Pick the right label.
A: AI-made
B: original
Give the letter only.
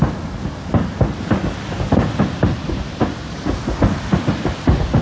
B